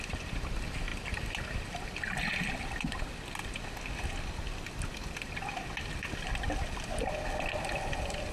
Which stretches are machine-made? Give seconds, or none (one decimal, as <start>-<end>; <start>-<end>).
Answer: none